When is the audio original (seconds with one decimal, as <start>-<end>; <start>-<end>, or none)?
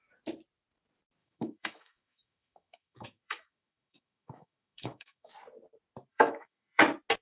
0.0-1.2; 5.3-6.1; 6.8-7.2